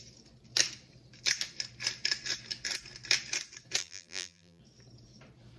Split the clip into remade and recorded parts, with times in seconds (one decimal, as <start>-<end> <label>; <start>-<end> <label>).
0.0-3.8 recorded; 3.8-4.6 remade; 4.6-5.6 recorded